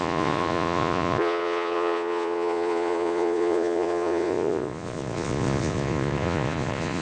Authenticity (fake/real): fake